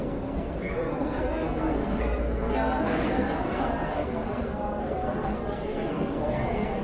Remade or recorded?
remade